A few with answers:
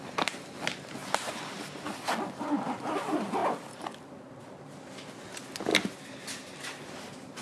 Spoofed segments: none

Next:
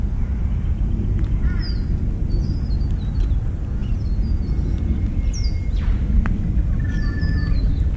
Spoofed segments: none

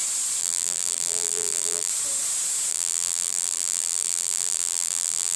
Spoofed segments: 0.4-1.9 (vocoder, BigVGAN v2); 2.7-5.4

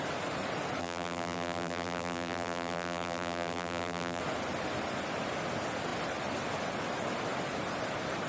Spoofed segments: 0.8-4.2 (vocoder, BigVGAN v2)

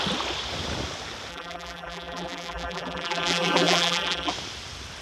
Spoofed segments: 1.3-4.3 (vocoder, BigVGAN v2)

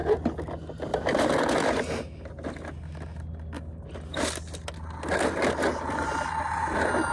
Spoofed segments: none

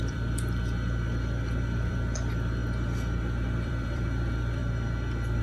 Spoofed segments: 0.0-2.6 (vocoder, BigVGAN v2); 3.2-4.6

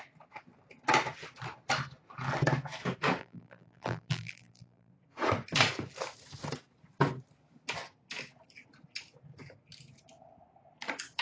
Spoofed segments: 3.2-4.9 (vocoder, BigVGAN v2)